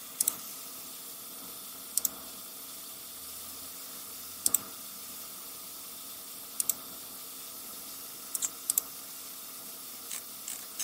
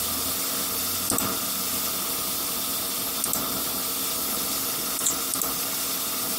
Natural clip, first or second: second